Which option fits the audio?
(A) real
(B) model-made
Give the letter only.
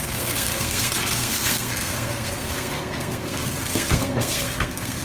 B